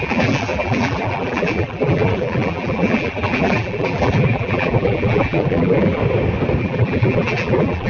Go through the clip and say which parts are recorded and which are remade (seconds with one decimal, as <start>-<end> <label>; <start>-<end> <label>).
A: 0.0-6.0 remade; 6.0-6.6 recorded; 6.6-7.9 remade